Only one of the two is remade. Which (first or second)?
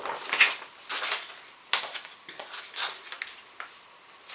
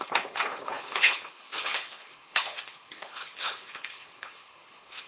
second